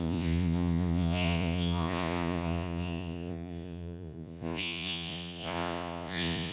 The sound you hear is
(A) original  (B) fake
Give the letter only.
B